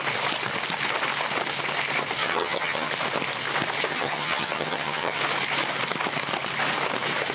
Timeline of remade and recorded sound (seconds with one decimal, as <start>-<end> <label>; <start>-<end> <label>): 0.0-2.2 recorded; 2.2-2.9 remade; 2.9-3.9 recorded; 3.9-5.2 remade; 5.2-7.3 recorded